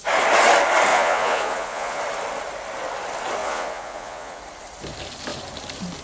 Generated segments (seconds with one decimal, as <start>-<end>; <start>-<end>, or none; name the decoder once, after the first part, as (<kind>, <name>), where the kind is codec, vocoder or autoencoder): 0.9-2.0 (vocoder, Vocos); 3.4-4.4